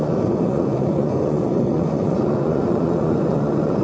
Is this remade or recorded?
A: remade